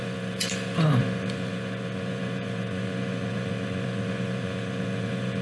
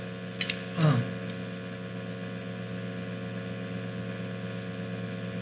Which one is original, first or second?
second